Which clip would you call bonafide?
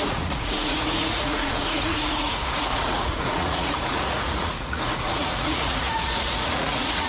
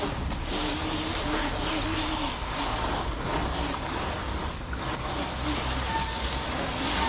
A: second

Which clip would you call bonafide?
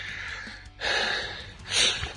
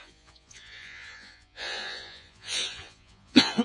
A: first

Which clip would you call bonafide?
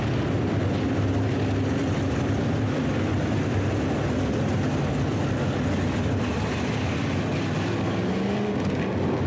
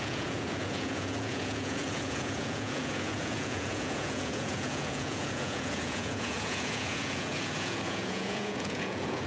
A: first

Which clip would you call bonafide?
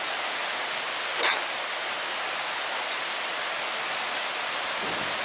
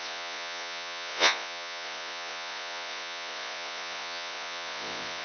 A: first